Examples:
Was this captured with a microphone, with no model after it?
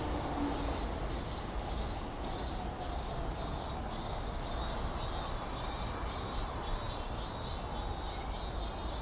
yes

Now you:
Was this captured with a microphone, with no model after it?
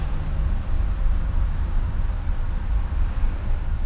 yes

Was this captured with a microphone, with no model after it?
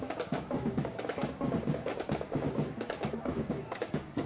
no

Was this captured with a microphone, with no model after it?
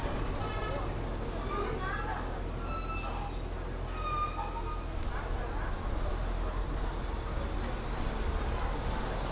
yes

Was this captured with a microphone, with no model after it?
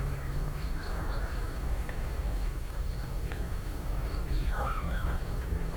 no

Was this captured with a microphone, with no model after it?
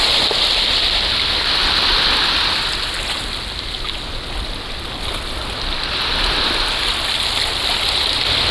yes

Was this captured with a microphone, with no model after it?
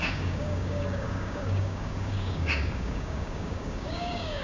no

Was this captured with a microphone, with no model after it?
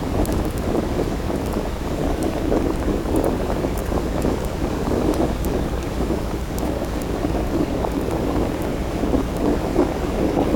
no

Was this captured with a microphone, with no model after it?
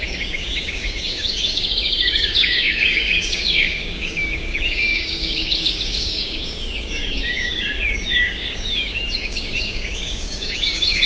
no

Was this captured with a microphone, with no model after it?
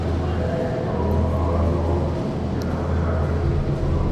yes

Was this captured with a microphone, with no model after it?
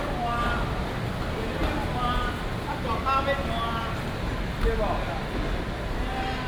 yes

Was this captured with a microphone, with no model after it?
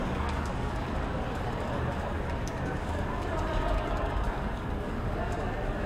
no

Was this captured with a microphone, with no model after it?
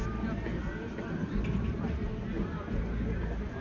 yes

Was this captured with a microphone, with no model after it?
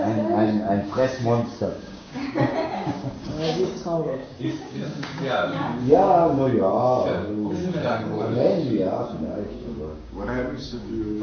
no